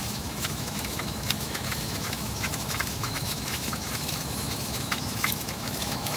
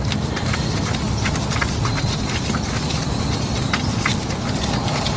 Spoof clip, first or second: first